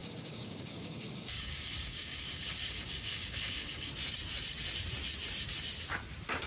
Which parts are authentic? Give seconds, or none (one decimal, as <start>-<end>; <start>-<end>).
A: 3.9-6.5